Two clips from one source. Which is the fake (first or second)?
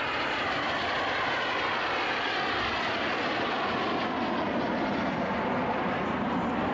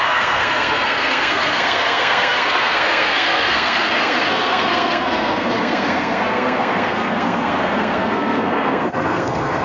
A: second